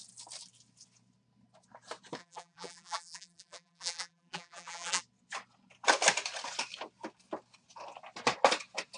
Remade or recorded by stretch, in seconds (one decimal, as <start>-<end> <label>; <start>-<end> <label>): 0.0-2.2 recorded; 2.2-5.0 remade; 5.0-9.0 recorded